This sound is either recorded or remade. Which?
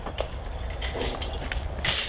recorded